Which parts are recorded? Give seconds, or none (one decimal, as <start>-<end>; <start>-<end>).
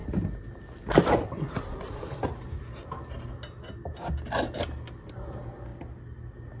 0.0-6.6